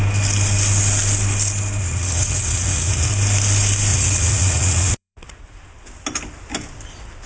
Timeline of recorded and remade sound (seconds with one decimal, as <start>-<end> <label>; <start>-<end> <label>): 0.0-1.8 recorded; 1.8-3.1 remade; 3.1-3.9 recorded; 3.9-5.6 remade; 5.6-7.3 recorded